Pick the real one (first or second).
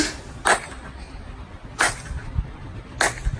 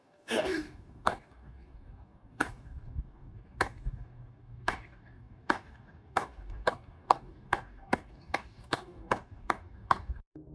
first